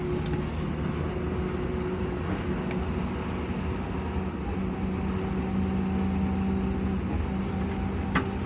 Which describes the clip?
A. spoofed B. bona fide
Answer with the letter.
B